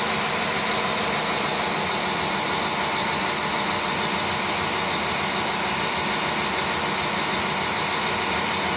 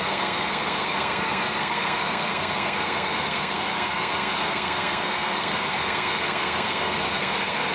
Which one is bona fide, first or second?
first